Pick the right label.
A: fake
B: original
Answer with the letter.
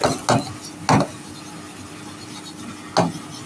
B